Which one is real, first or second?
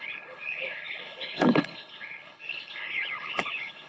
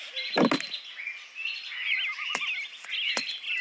second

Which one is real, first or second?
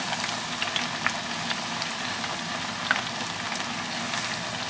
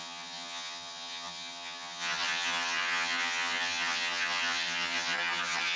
first